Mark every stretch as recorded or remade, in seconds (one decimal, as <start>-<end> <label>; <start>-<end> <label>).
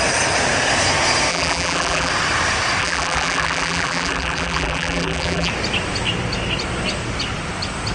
0.0-1.3 recorded; 1.3-2.1 remade; 2.1-2.8 recorded; 2.8-5.5 remade; 5.5-7.9 recorded